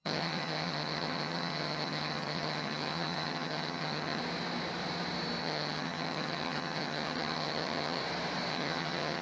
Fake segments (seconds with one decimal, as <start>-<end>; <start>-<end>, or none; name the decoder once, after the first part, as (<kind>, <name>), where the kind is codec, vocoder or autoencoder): 0.0-4.2 (vocoder, HiFi-GAN); 5.4-8.0; 8.5-9.2

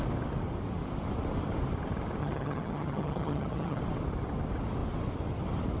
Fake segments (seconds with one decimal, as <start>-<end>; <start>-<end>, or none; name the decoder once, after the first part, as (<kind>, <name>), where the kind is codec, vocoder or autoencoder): 2.2-3.8 (vocoder, HiFi-GAN)

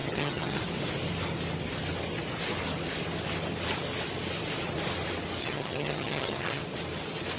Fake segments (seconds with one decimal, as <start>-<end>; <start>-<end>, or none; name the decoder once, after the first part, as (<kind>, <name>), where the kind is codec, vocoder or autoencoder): 0.0-0.6 (vocoder, HiFi-GAN); 5.4-6.6

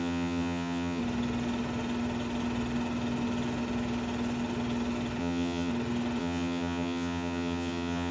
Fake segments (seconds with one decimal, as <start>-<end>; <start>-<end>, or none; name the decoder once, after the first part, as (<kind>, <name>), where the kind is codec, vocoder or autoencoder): 0.0-1.0 (vocoder, HiFi-GAN); 5.2-5.7; 6.2-8.1

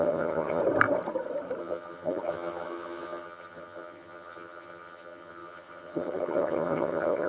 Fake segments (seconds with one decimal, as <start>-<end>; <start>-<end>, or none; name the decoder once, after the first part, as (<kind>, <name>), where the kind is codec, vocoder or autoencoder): 0.0-0.6 (vocoder, HiFi-GAN); 1.6-7.3

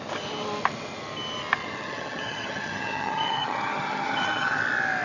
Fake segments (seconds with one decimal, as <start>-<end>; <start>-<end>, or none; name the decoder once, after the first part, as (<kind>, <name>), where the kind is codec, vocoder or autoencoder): 1.6-4.6 (vocoder, HiFi-GAN)

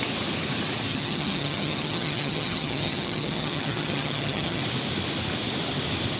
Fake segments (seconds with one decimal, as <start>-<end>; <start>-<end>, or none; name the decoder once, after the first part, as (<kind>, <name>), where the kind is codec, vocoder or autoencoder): 0.9-4.6 (vocoder, HiFi-GAN)